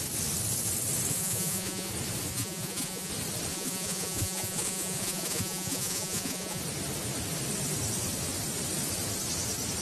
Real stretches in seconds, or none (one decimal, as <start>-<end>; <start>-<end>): 0.0-1.1; 1.9-2.3; 3.1-3.5; 6.6-9.8